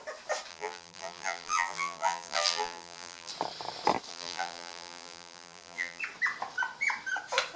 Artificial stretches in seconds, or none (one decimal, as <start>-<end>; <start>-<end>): 0.5-3.3; 4.1-6.0